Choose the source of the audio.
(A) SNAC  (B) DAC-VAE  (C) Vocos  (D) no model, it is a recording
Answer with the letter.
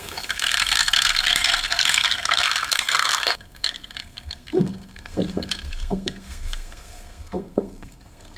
A